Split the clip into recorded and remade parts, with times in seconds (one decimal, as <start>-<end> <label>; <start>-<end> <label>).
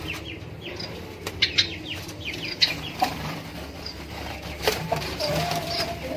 0.0-1.6 recorded; 1.6-5.3 remade; 5.3-6.2 recorded